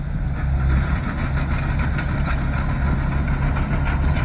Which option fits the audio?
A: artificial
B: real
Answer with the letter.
B